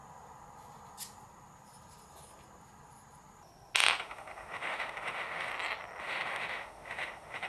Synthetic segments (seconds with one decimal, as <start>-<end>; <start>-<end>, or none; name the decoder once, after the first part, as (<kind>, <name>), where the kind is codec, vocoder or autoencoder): 4.0-5.5 (autoencoder, DAC-VAE); 6.0-7.5